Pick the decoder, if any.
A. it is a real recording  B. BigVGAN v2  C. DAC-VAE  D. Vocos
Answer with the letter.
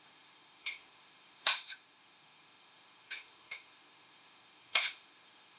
C